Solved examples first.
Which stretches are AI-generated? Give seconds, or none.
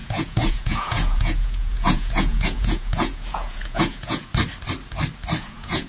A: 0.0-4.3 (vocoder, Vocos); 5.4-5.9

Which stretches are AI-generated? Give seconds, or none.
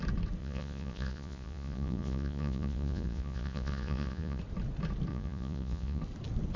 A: 0.4-4.4 (vocoder, Vocos); 5.1-6.0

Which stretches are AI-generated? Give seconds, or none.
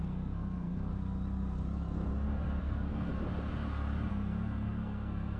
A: 0.0-0.9 (codec, SNAC); 2.6-3.1; 4.1-5.4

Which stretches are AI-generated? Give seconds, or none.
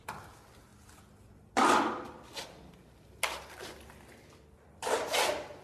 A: none